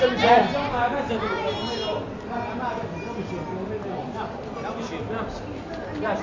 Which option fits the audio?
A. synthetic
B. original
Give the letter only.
B